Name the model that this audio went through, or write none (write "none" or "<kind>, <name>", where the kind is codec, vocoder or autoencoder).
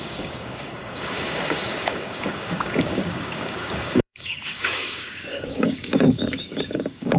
codec, DAC